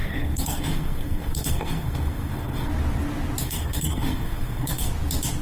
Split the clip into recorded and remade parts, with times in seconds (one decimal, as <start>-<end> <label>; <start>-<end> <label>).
0.0-2.7 remade; 2.7-3.4 recorded; 3.4-4.9 remade; 4.9-5.4 recorded